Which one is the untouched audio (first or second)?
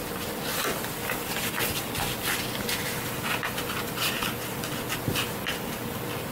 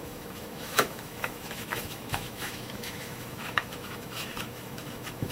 first